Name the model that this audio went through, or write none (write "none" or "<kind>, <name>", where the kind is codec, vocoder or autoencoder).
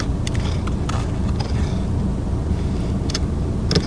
none